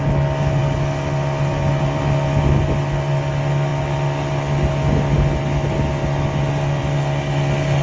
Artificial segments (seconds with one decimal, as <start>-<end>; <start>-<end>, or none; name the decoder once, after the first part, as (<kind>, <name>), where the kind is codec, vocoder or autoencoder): none